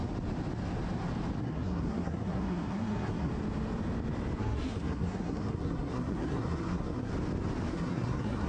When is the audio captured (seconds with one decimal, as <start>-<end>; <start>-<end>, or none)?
0.0-1.4; 3.3-4.4; 7.1-7.7